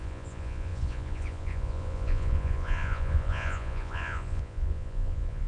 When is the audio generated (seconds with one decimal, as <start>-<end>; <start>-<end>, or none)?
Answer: 0.0-5.5